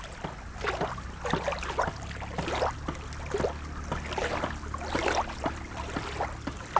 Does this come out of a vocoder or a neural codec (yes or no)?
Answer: no